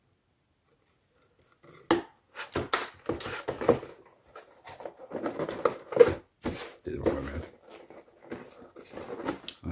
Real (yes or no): yes